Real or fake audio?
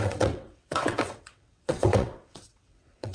fake